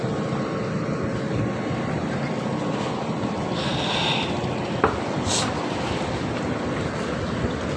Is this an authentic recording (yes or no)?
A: yes